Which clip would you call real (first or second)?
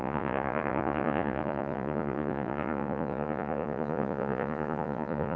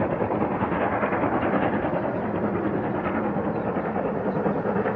second